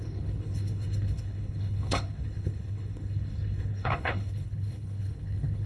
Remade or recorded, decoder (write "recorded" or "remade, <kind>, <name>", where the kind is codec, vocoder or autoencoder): remade, codec, HILCodec